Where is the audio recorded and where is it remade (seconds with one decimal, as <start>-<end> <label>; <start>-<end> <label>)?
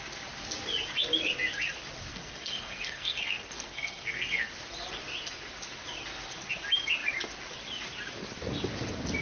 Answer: 0.0-2.1 recorded; 2.1-4.5 remade; 4.5-9.2 recorded